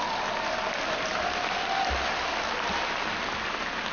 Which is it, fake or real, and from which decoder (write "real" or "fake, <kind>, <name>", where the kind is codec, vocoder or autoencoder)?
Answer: real